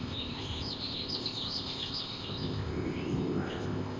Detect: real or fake fake